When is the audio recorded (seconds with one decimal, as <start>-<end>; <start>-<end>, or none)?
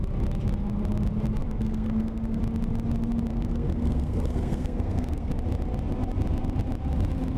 0.0-1.4; 2.4-3.3; 5.3-7.4